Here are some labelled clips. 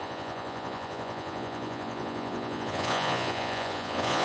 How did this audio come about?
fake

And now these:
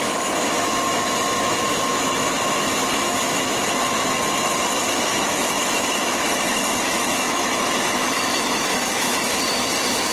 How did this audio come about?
fake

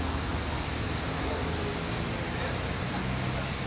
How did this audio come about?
real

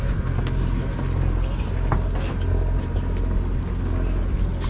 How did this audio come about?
real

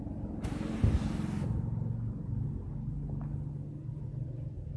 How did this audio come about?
real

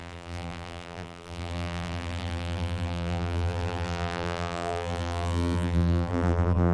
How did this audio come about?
fake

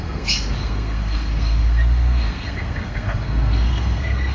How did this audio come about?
fake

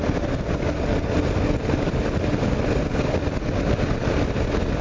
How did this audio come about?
real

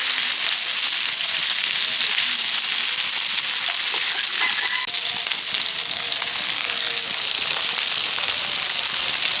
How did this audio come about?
real